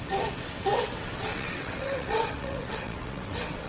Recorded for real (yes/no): no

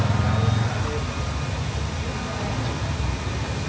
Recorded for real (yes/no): yes